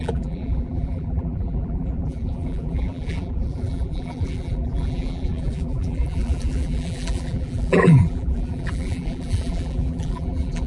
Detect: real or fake fake